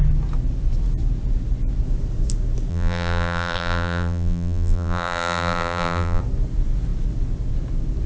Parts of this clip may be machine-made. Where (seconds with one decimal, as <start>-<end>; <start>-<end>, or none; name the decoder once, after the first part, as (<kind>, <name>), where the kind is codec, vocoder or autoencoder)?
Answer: 2.7-6.2 (vocoder, BigVGAN v2)